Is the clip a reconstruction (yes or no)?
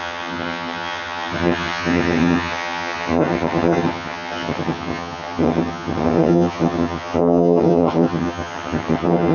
yes